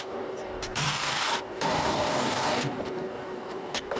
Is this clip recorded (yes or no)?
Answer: no